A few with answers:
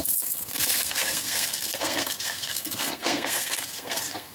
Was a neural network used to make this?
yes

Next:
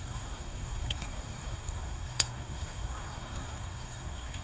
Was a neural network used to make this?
yes